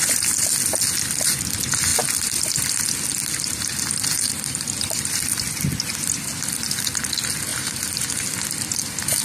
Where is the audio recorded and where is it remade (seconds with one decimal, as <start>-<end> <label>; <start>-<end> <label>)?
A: 0.0-7.5 recorded; 7.5-8.1 remade; 8.1-9.2 recorded